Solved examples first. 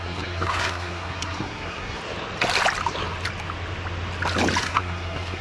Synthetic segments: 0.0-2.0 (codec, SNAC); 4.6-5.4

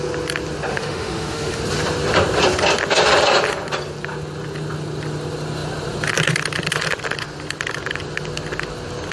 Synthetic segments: 0.7-1.6 (autoencoder, DAC-VAE)

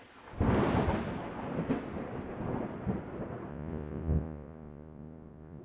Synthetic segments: 3.5-5.6 (vocoder, Vocos)

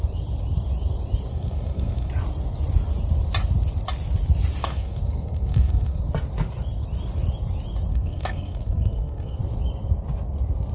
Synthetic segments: 1.3-2.1 (codec, SNAC); 4.6-6.0; 7.9-9.4

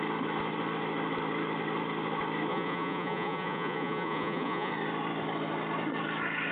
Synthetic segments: 2.5-4.7 (vocoder, Vocos)

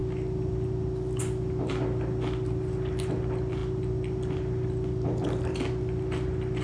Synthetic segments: none

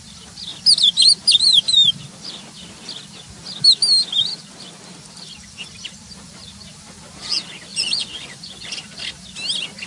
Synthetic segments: 7.7-8.7 (vocoder, Vocos)